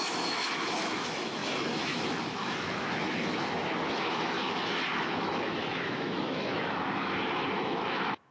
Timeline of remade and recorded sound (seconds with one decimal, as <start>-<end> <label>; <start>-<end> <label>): 0.0-8.3 remade